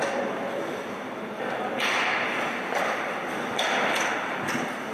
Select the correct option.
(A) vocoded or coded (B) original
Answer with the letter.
B